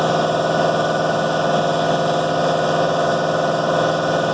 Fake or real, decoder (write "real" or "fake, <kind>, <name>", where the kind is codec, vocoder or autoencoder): real